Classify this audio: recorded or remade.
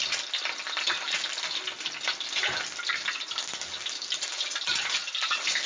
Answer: recorded